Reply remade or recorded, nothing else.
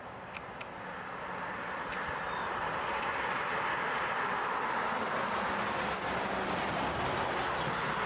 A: recorded